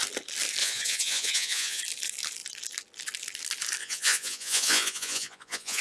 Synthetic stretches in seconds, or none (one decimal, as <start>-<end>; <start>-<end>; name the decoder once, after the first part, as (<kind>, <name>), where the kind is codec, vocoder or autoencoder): 0.6-1.8 (vocoder, Vocos); 3.8-5.8